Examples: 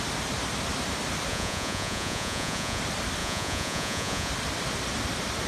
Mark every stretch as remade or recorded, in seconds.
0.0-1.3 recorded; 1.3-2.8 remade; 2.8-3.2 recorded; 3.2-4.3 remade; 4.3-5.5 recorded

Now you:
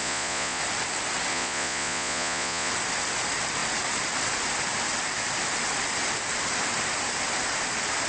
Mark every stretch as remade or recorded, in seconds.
0.0-0.6 remade; 0.6-1.3 recorded; 1.3-2.7 remade; 2.7-8.1 recorded

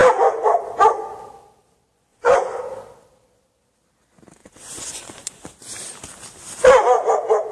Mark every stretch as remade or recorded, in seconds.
0.0-0.6 remade; 0.6-2.1 recorded; 2.1-2.6 remade; 2.6-4.4 recorded; 4.4-5.5 remade; 5.5-7.5 recorded

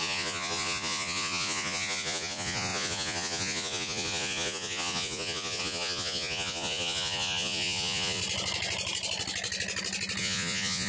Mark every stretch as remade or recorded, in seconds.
0.0-8.2 remade; 8.2-10.2 recorded; 10.2-10.9 remade

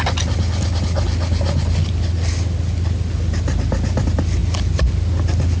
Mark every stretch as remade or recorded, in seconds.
0.0-5.6 recorded

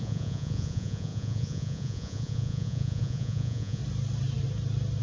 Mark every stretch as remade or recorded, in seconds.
0.0-3.8 remade; 3.8-5.0 recorded